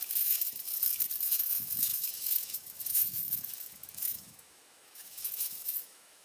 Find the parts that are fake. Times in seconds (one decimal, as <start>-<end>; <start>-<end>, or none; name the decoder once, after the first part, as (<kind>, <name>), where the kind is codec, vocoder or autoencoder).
0.0-0.7 (autoencoder, DAC-VAE); 1.2-6.2